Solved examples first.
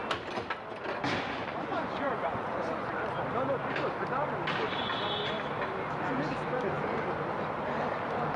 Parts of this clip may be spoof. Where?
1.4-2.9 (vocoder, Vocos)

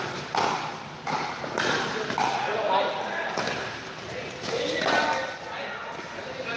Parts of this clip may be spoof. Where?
none

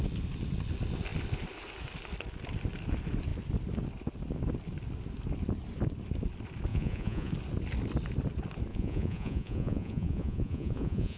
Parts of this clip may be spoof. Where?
6.7-7.3 (vocoder, Vocos); 8.7-11.2

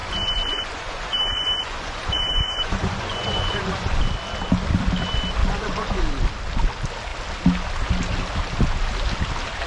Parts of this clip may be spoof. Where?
0.0-4.0 (vocoder, Vocos); 5.4-6.0

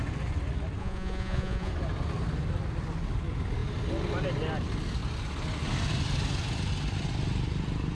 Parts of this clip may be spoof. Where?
0.8-1.7 (vocoder, Vocos)

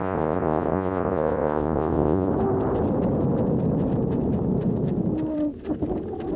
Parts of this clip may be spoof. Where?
0.0-2.3 (vocoder, Vocos)